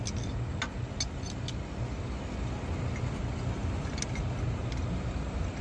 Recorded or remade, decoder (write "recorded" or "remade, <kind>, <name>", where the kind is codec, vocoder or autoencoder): recorded